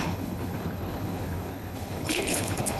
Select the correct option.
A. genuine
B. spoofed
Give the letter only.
B